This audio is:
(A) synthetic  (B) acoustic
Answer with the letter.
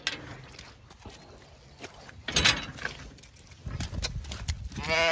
B